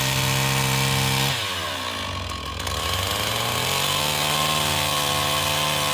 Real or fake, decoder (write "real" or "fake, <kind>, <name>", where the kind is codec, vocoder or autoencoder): real